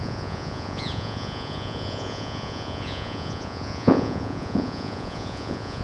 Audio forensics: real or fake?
fake